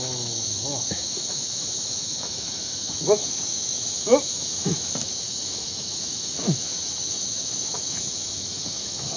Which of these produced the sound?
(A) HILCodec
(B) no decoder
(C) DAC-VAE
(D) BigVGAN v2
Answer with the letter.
C